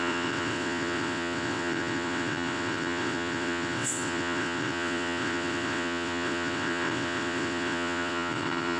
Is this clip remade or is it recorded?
remade